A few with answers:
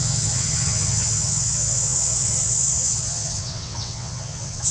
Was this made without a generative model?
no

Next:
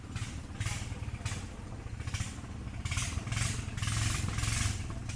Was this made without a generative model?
yes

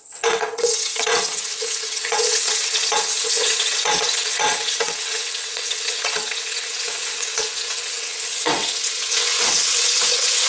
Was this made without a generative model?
no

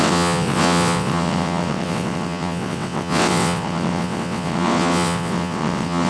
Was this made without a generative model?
no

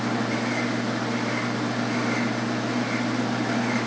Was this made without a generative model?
yes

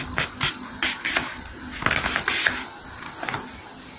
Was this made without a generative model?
yes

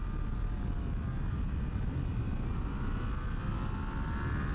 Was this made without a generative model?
yes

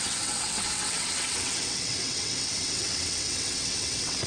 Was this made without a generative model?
no